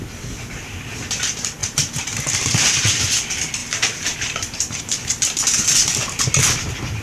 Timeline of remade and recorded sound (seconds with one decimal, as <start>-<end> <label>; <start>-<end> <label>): 0.0-1.6 recorded; 1.6-2.8 remade; 2.8-3.6 recorded; 3.6-4.8 remade; 4.8-7.0 recorded